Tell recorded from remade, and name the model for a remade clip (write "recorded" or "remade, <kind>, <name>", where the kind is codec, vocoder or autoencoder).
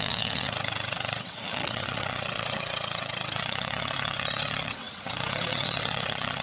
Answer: remade, vocoder, WaveNeXt